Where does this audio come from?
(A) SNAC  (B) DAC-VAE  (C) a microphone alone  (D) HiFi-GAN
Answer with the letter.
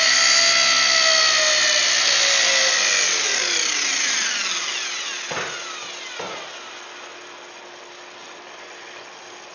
C